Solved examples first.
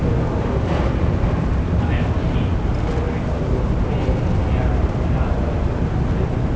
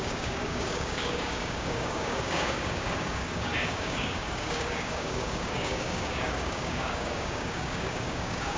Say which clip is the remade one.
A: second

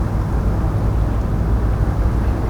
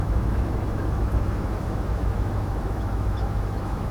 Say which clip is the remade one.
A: second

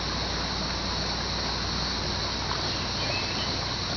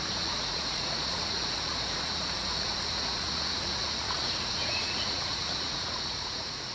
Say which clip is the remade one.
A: second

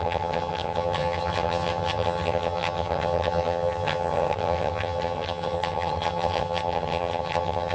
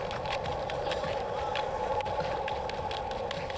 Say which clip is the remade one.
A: first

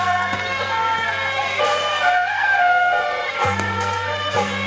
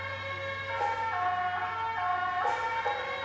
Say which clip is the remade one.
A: first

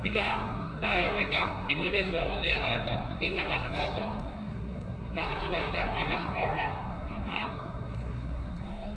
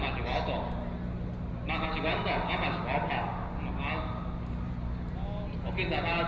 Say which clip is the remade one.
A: first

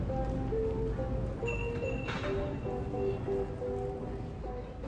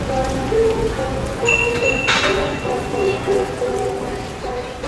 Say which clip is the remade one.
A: second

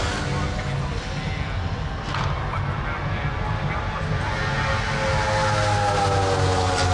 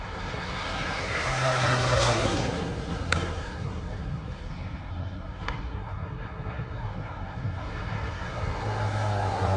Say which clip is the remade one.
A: second